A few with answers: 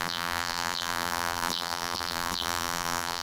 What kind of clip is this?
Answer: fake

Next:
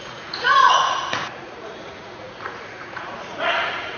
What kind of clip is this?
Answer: fake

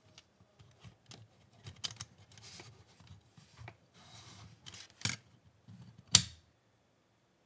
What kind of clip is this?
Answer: real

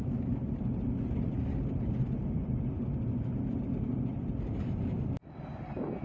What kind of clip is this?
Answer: real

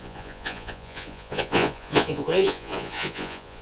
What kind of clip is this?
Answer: fake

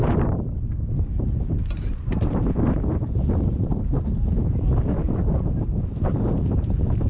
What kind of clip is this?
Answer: fake